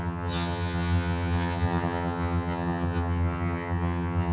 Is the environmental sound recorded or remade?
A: remade